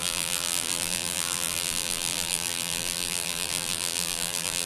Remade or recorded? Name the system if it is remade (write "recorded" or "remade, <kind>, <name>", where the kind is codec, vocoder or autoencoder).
remade, vocoder, BigVGAN v2